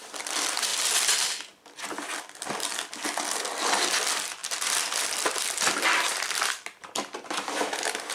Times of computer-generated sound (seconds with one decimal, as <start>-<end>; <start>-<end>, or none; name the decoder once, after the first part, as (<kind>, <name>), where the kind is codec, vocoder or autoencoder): none